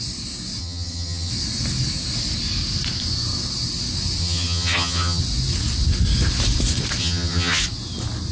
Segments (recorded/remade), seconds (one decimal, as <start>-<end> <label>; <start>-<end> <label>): 0.0-0.6 recorded; 0.6-1.3 remade; 1.3-4.2 recorded; 4.2-5.2 remade; 5.2-7.0 recorded; 7.0-7.6 remade; 7.6-8.3 recorded